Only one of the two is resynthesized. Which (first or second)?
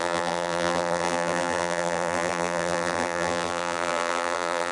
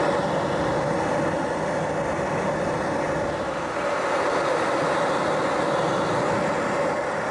first